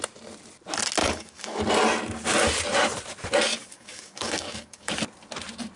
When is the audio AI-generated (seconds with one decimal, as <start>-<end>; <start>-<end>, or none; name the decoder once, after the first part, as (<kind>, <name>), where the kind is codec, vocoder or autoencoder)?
1.0-1.6 (codec, DAC); 3.6-4.9